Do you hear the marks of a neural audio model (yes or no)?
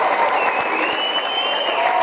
no